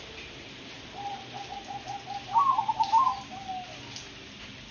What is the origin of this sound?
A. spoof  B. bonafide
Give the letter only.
B